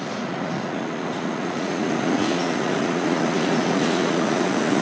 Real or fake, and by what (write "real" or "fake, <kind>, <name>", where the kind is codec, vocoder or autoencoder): fake, vocoder, Vocos